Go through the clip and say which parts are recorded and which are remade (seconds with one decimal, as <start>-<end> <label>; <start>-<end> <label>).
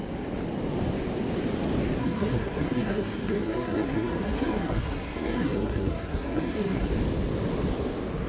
0.0-2.0 recorded; 2.0-6.9 remade; 6.9-8.3 recorded